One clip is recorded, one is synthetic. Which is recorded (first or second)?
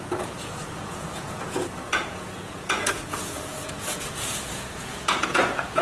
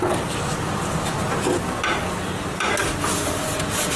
second